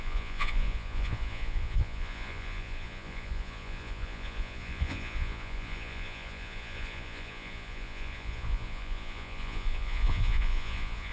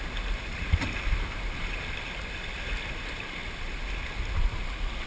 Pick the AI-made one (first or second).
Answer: first